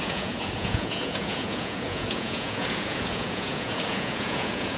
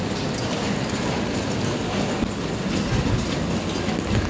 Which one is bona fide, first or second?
second